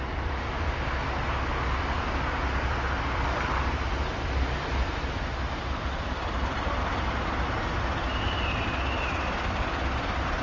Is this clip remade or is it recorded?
recorded